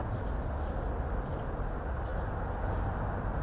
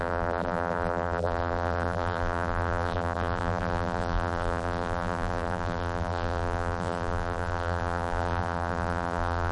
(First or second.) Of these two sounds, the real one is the first